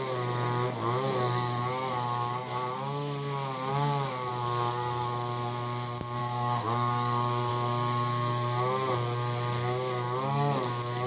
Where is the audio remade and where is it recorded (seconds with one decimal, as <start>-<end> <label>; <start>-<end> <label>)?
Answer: 0.0-3.7 recorded; 3.7-4.3 remade; 4.3-6.2 recorded; 6.2-7.5 remade; 7.5-11.1 recorded